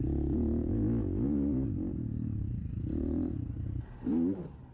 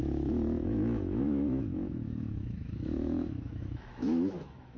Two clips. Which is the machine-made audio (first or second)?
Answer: second